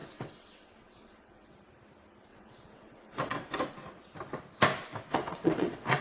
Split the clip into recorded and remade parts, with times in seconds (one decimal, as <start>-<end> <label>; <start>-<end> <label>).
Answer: 0.0-1.5 remade; 1.5-2.3 recorded; 2.3-3.6 remade; 3.6-5.1 recorded; 5.1-6.0 remade